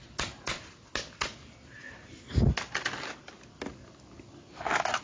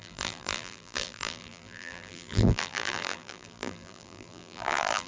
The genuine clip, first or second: first